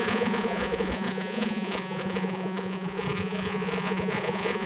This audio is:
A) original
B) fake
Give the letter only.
B